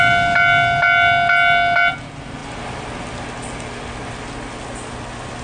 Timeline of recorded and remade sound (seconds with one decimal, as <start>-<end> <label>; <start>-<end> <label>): 0.0-5.4 recorded